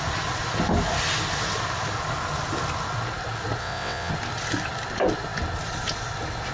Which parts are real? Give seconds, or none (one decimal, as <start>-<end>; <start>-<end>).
0.0-3.6; 4.1-6.5